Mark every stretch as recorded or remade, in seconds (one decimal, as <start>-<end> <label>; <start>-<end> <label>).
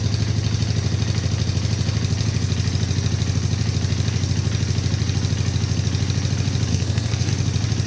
0.0-6.7 recorded; 6.7-7.3 remade; 7.3-7.9 recorded